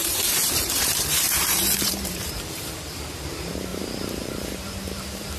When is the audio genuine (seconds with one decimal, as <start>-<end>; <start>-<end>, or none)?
none